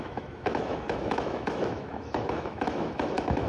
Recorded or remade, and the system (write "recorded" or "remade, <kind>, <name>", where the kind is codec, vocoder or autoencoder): remade, autoencoder, DAC-VAE